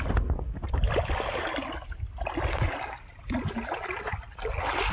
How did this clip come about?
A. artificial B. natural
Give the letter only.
B